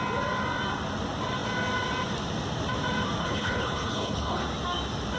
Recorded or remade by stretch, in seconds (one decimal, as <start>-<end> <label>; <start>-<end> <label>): 0.0-3.2 recorded; 3.2-4.4 remade; 4.4-5.2 recorded